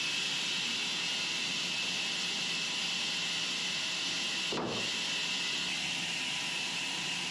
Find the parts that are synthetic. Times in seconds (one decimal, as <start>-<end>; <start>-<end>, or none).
none